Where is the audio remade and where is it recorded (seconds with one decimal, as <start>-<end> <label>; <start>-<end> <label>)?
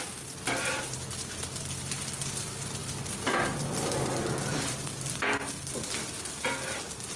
0.0-7.2 remade